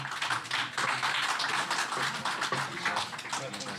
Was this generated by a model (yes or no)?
no